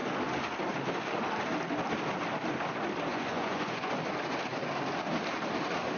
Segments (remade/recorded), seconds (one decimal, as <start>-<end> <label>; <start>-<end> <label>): 0.0-3.1 recorded; 3.1-3.9 remade; 3.9-6.0 recorded

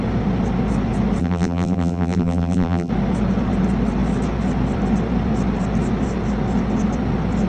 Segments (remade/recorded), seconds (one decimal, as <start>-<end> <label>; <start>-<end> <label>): 0.0-1.2 recorded; 1.2-2.9 remade; 2.9-7.5 recorded

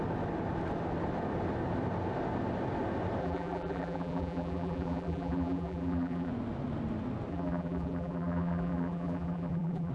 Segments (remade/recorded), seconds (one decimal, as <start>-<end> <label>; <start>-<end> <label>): 0.0-3.2 recorded; 3.2-6.3 remade; 6.3-7.3 recorded; 7.3-9.9 remade

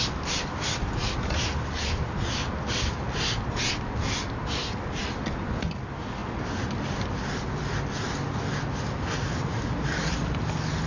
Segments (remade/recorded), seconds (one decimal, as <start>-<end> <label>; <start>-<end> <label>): 0.0-10.9 recorded

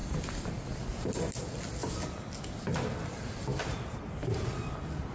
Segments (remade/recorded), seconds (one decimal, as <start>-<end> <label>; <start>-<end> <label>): 0.0-3.5 recorded; 3.5-5.1 remade

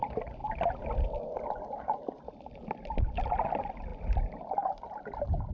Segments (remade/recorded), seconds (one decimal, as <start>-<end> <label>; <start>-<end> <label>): 0.0-0.4 recorded; 0.4-1.0 remade; 1.0-3.9 recorded; 3.9-5.5 remade

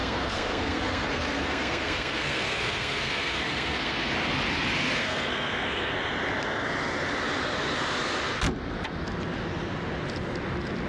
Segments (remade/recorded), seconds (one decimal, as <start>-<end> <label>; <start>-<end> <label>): 0.0-4.1 remade; 4.1-5.0 recorded; 5.0-5.9 remade; 5.9-10.9 recorded

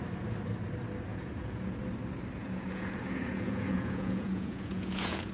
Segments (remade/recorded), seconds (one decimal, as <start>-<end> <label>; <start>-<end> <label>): 0.0-1.1 recorded; 1.1-1.8 remade; 1.8-2.4 recorded; 2.4-5.3 remade